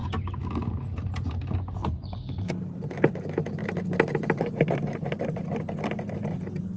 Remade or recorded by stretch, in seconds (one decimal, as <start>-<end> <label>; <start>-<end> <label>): 0.0-1.8 recorded; 1.8-2.6 remade; 2.6-6.8 recorded